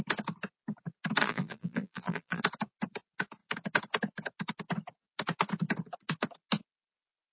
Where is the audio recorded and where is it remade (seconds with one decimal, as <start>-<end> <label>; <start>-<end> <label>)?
0.0-1.2 recorded; 1.2-2.4 remade; 2.4-7.3 recorded